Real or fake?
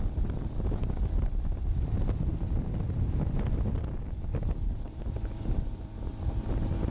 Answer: fake